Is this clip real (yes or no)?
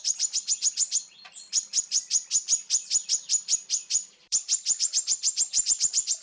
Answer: no